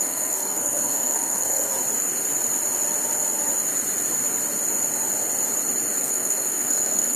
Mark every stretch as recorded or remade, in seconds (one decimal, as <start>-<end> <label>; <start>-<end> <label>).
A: 0.0-1.7 remade; 1.7-6.0 recorded; 6.0-7.2 remade